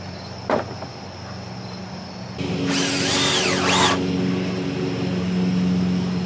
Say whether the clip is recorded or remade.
recorded